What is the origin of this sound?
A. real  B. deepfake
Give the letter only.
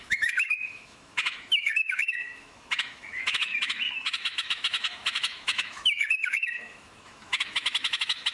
B